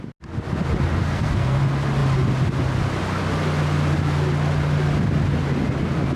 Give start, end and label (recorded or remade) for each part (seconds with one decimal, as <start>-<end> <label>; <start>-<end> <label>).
0.0-1.0 recorded; 1.0-1.6 remade; 1.6-6.2 recorded